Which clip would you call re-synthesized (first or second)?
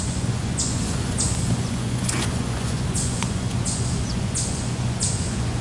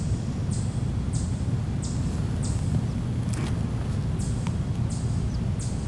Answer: first